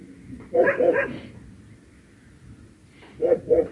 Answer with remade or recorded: recorded